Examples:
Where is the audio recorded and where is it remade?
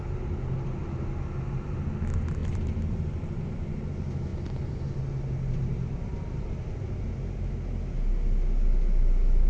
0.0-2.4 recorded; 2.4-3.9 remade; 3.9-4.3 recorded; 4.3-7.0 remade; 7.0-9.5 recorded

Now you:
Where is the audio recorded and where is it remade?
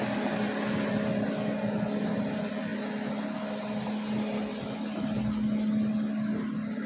0.0-6.9 recorded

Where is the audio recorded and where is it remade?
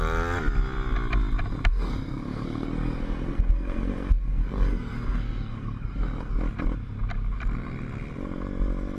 0.0-1.7 recorded; 1.7-6.3 remade; 6.3-9.0 recorded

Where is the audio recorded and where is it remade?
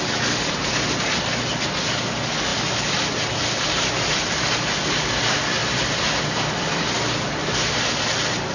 0.0-8.5 recorded